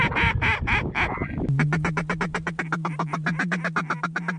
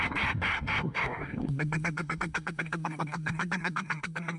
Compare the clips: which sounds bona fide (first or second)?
first